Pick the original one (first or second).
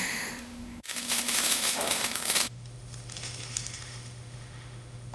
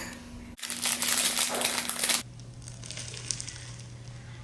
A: second